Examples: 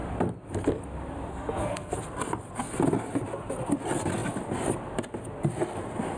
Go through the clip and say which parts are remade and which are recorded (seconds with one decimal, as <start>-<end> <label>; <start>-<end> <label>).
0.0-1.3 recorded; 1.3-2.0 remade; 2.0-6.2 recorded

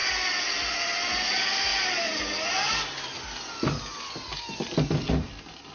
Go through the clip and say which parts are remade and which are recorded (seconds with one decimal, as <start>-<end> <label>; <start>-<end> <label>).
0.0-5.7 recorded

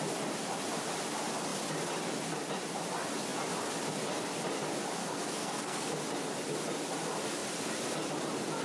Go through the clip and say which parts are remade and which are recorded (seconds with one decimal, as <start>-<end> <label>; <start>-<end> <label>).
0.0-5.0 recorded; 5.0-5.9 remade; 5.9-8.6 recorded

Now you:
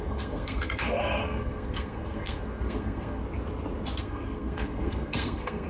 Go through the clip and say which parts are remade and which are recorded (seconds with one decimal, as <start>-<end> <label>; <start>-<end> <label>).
0.0-3.2 remade; 3.2-4.0 recorded; 4.0-5.7 remade

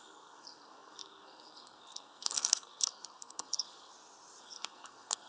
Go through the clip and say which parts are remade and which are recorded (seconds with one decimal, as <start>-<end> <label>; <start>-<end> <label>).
0.0-3.9 remade; 3.9-4.4 recorded; 4.4-5.3 remade